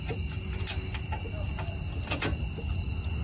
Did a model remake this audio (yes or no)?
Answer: no